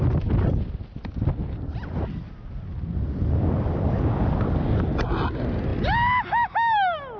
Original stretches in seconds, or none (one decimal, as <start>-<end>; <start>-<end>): 0.0-7.2